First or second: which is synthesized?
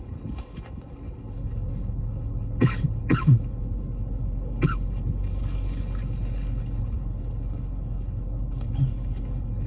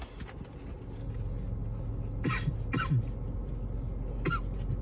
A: first